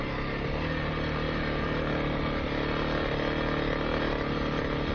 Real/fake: real